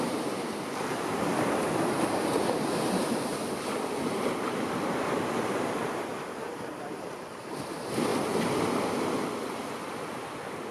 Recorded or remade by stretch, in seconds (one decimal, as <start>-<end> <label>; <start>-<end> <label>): 0.0-8.1 remade; 8.1-10.7 recorded